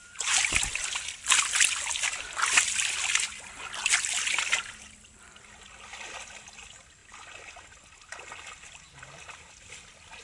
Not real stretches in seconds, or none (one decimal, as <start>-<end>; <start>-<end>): 0.0-7.0; 8.2-10.2